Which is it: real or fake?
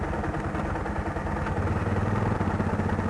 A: real